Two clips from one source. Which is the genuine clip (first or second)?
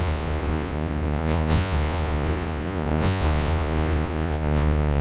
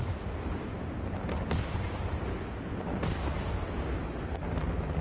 second